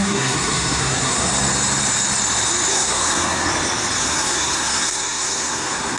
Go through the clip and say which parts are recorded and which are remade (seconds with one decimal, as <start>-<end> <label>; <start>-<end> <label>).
0.0-1.3 remade; 1.3-2.7 recorded; 2.7-3.5 remade; 3.5-4.0 recorded; 4.0-6.0 remade